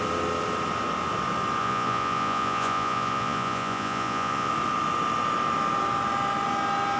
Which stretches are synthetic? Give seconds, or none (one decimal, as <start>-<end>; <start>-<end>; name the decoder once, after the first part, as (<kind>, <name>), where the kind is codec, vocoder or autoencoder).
1.6-4.5 (vocoder, Vocos)